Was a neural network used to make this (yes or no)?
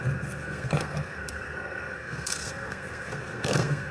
yes